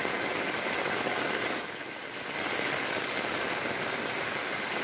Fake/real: real